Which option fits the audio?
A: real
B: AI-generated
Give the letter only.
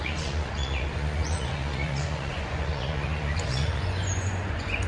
B